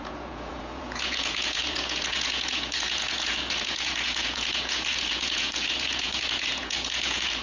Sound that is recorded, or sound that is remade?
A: remade